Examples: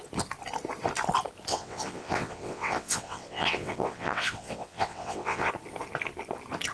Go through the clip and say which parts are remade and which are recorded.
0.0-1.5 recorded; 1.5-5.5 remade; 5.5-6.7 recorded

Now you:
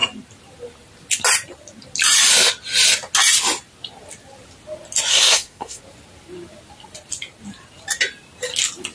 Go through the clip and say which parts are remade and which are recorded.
0.0-5.1 recorded; 5.1-5.8 remade; 5.8-8.9 recorded

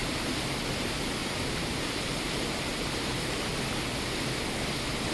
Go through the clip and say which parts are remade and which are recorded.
0.0-1.2 recorded; 1.2-2.1 remade; 2.1-5.1 recorded

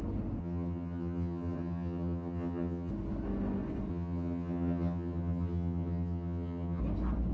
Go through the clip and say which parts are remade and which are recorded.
0.0-0.4 recorded; 0.4-2.9 remade; 2.9-3.9 recorded; 3.9-6.8 remade; 6.8-7.3 recorded

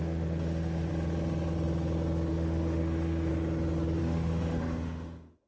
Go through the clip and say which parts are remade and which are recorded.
0.0-0.9 remade; 0.9-2.3 recorded; 2.3-3.3 remade; 3.3-4.0 recorded; 4.0-5.5 remade

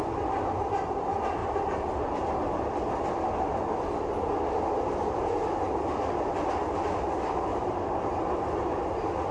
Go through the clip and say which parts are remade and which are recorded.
0.0-1.4 recorded; 1.4-2.2 remade; 2.2-7.5 recorded; 7.5-8.2 remade; 8.2-9.3 recorded

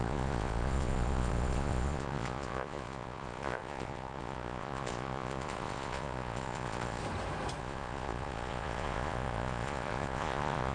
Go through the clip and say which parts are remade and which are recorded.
0.0-7.0 remade; 7.0-7.6 recorded; 7.6-10.7 remade